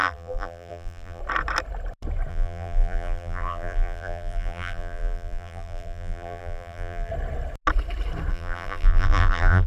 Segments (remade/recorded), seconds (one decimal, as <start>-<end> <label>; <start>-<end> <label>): 0.0-1.2 remade; 1.2-2.3 recorded; 2.3-7.1 remade; 7.1-8.3 recorded; 8.3-9.7 remade